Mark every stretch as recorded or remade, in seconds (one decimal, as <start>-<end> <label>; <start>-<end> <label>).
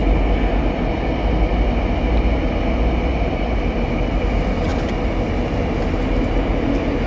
0.0-7.1 recorded